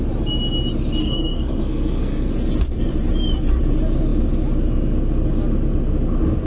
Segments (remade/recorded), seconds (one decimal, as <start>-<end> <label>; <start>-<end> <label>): 0.0-1.0 recorded; 1.0-2.3 remade; 2.3-6.5 recorded